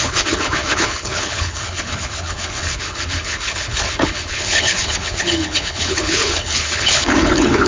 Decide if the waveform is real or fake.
fake